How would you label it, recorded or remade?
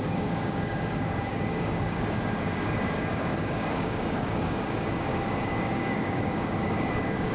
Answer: remade